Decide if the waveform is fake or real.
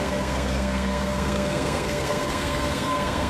fake